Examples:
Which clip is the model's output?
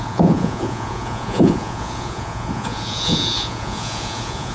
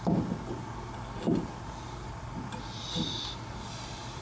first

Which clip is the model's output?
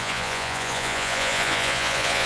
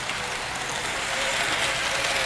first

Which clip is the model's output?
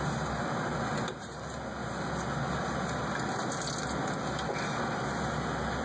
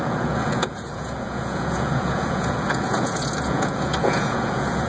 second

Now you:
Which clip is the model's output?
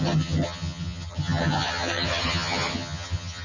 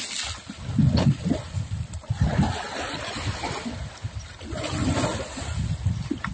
first